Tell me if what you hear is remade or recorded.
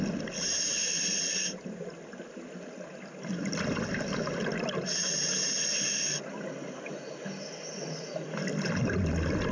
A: recorded